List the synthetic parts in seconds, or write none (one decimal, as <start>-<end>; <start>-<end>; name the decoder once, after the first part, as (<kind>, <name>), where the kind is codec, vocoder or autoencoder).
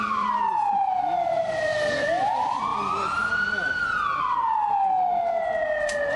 0.0-1.7 (vocoder, BigVGAN v2); 2.3-2.7